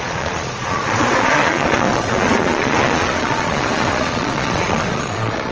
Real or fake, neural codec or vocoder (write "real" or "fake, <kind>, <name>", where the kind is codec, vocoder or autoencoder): fake, vocoder, Vocos